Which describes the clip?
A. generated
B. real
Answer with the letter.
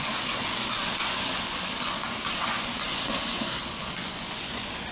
A